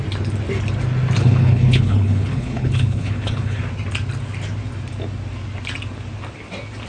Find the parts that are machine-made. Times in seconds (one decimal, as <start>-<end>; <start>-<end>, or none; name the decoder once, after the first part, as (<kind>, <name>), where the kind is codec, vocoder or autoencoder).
1.2-3.6 (codec, HILCodec)